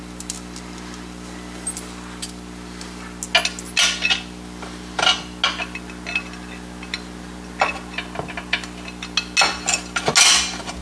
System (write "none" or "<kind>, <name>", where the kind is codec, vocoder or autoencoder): none